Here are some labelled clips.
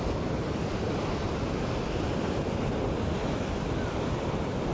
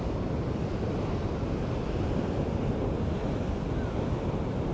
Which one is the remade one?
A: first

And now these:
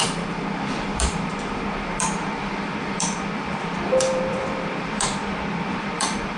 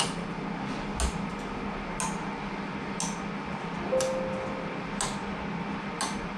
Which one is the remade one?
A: first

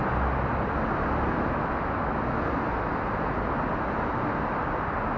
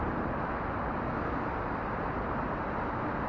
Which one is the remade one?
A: second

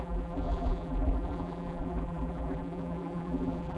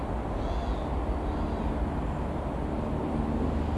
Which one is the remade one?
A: first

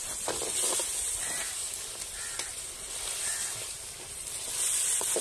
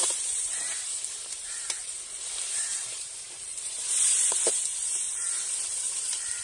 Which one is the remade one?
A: second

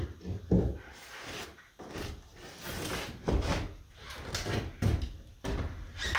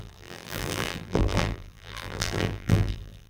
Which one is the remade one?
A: second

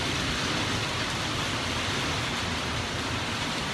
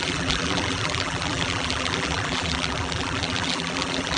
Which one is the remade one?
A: second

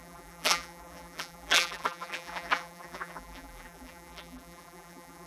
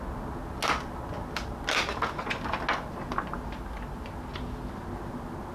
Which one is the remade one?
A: first